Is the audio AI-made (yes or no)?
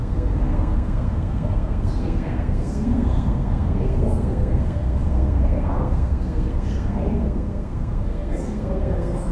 yes